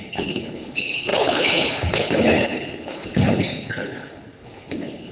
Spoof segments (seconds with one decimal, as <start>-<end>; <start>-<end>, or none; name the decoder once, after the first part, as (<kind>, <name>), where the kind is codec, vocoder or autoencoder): 0.0-5.1 (codec, HILCodec)